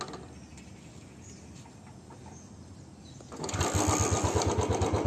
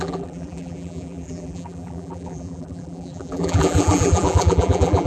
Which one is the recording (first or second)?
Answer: first